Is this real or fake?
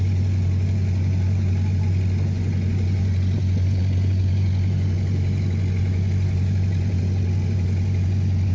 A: fake